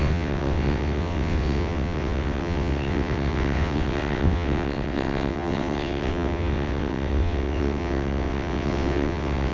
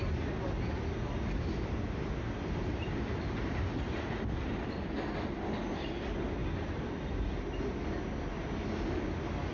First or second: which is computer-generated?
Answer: first